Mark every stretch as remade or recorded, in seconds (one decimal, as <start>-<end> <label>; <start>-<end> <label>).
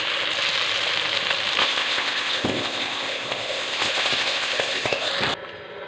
0.0-1.6 recorded; 1.6-5.1 remade; 5.1-5.9 recorded